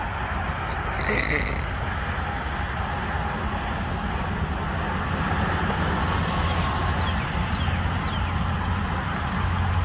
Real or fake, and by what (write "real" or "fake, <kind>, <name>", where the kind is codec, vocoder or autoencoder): real